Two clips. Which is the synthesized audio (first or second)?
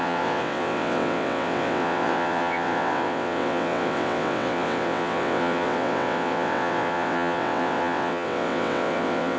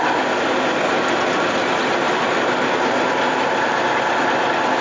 first